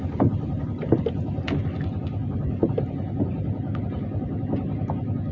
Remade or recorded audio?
recorded